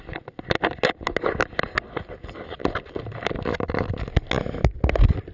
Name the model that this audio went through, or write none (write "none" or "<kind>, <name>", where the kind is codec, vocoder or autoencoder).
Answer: none